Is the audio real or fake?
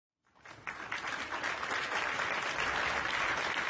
real